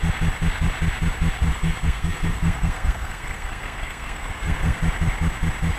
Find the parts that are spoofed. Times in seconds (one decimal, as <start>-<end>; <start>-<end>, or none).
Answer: 1.5-4.8